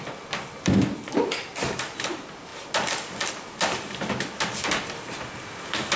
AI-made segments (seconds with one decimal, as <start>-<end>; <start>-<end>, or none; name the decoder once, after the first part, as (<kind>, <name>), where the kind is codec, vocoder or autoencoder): 0.0-2.5 (vocoder, BigVGAN v2); 3.3-6.0